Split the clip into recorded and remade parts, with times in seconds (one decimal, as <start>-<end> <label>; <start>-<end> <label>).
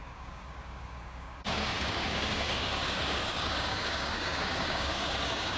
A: 0.0-5.6 remade